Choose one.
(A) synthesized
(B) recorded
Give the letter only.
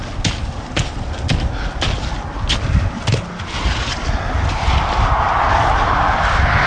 B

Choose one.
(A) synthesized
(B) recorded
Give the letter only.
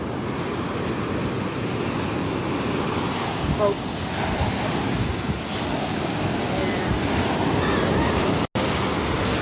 B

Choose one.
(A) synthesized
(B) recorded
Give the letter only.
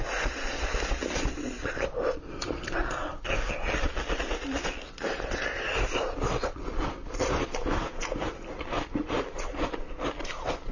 B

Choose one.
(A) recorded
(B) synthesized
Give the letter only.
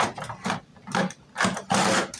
A